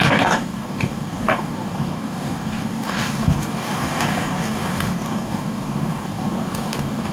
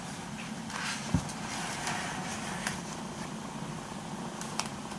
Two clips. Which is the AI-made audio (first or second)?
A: first